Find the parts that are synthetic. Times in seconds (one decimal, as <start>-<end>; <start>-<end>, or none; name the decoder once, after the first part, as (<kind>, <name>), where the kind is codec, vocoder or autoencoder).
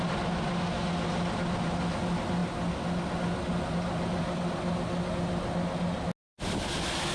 none